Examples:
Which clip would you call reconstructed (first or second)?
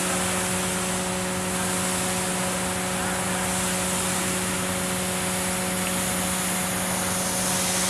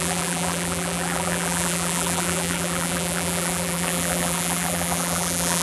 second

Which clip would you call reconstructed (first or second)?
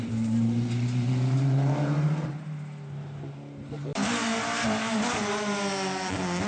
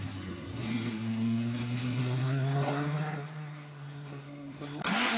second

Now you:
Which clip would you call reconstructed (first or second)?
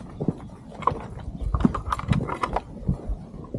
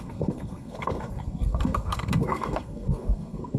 second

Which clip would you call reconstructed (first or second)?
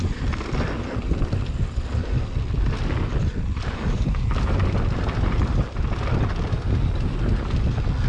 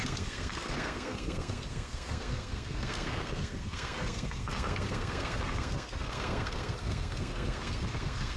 second